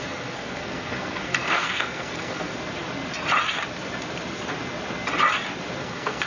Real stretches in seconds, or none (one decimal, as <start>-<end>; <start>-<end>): 2.5-5.8